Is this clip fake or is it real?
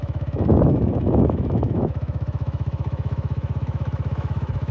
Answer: fake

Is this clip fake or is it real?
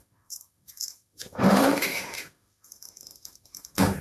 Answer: fake